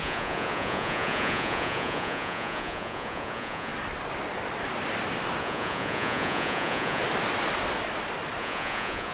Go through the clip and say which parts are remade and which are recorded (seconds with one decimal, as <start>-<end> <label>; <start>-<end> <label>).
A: 0.0-3.7 remade; 3.7-5.4 recorded; 5.4-7.0 remade; 7.0-8.4 recorded; 8.4-9.1 remade